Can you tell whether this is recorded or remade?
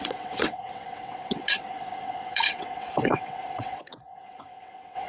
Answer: remade